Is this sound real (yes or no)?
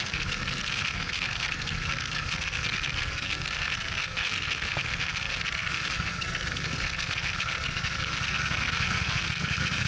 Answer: no